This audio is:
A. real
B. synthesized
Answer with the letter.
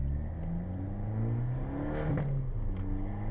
A